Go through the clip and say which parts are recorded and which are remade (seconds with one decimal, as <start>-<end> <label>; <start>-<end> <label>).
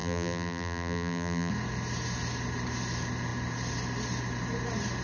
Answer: 0.0-1.5 remade; 1.5-5.0 recorded